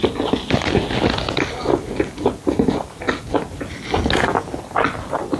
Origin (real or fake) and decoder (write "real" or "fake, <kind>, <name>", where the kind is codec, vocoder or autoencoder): real